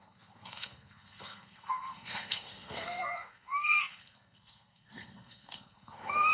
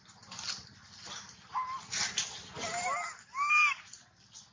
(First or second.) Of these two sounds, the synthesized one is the first